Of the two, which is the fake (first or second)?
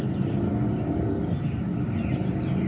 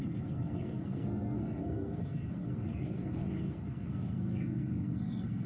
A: second